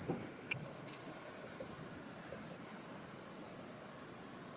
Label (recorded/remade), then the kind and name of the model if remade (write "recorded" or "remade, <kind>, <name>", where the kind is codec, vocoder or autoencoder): recorded